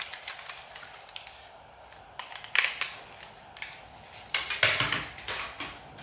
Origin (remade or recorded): recorded